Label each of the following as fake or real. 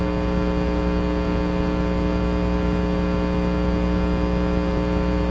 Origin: real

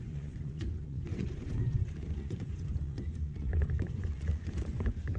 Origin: fake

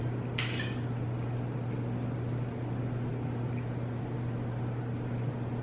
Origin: real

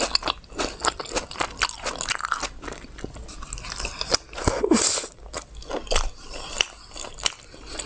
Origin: real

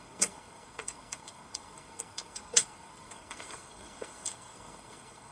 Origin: fake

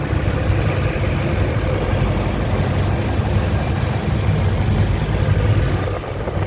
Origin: real